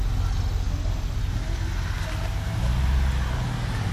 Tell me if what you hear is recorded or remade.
recorded